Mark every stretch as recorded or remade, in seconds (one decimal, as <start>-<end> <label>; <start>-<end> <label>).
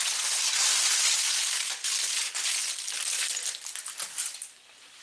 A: 0.0-5.0 recorded